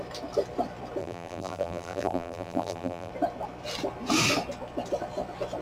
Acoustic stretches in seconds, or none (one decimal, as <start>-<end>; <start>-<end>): 0.0-1.0; 3.1-5.6

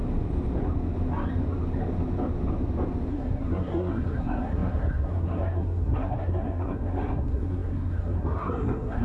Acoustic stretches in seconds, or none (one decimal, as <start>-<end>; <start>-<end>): 0.0-3.1

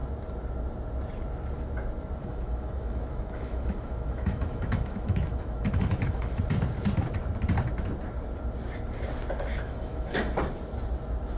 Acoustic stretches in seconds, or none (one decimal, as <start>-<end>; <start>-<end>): 0.0-2.2; 6.4-9.5; 10.2-11.4

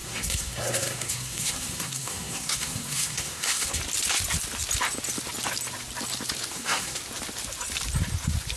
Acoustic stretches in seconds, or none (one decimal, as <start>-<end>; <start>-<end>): 3.8-6.5; 7.0-8.6

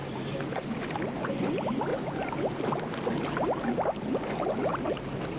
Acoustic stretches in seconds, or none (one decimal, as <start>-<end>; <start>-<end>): 0.0-5.4

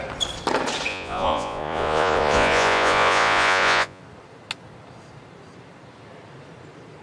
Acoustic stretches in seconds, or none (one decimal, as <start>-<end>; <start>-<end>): 0.0-0.9; 4.0-7.0

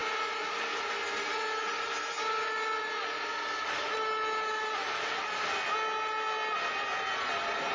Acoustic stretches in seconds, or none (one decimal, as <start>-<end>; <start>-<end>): 0.0-7.7

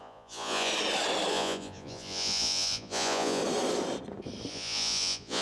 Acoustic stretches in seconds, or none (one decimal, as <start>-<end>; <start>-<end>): 0.7-1.3; 3.4-4.5